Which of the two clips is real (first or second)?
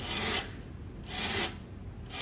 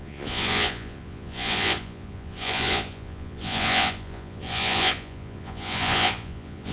first